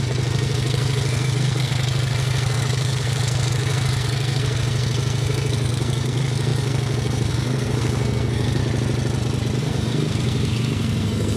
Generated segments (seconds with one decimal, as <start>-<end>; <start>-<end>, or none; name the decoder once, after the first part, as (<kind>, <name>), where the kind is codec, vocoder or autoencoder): 0.0-8.6 (codec, SNAC); 9.6-11.4